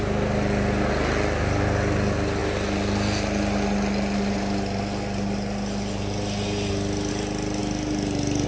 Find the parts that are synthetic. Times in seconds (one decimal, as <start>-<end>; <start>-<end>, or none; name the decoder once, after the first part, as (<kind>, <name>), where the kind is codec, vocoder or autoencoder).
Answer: none